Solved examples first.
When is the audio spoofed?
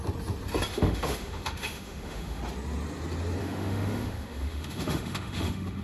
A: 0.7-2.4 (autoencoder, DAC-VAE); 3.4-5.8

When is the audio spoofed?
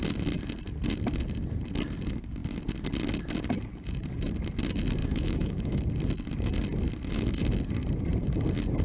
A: 5.0-5.8 (autoencoder, DAC-VAE)